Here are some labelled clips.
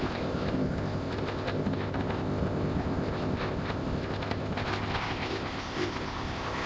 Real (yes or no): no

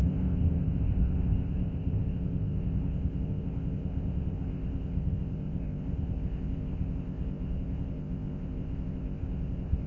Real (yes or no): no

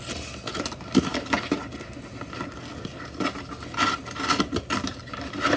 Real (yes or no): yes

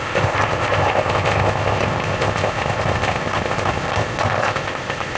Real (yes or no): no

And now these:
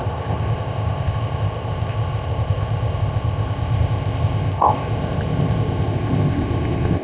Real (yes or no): no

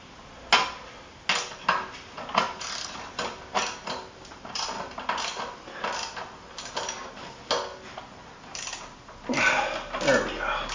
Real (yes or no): yes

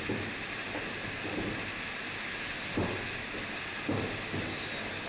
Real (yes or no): yes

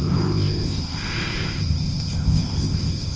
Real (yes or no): no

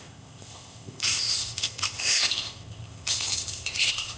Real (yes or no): no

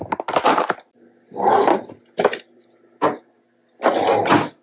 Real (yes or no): yes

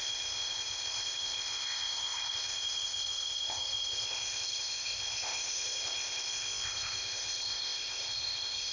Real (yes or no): no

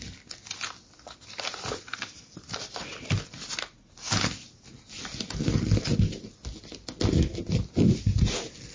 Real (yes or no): yes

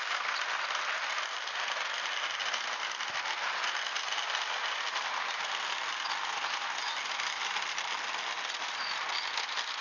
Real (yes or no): yes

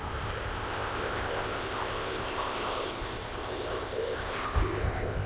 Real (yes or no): no